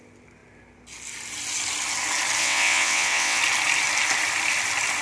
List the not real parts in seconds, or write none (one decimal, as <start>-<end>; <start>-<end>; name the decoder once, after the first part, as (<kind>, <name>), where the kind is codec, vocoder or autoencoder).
2.4-3.4 (vocoder, WaveNeXt)